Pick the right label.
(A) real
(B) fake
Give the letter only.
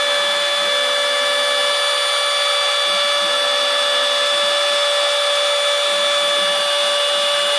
A